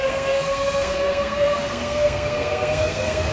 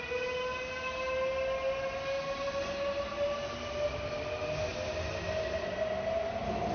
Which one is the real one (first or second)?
second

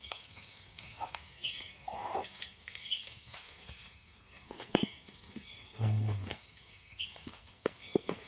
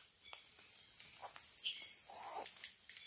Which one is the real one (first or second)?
second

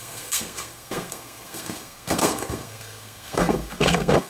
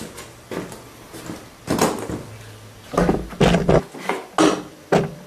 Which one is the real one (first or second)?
second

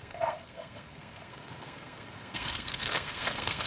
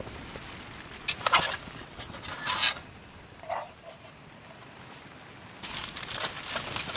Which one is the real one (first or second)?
second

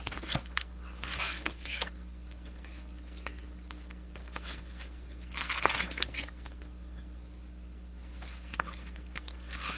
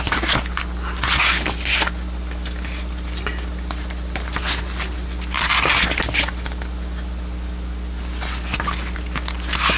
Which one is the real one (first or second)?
second